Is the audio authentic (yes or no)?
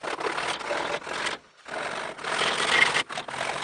yes